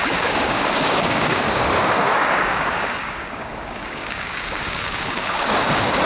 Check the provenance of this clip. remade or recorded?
remade